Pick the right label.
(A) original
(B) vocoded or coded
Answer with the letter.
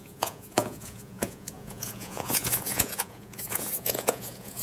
B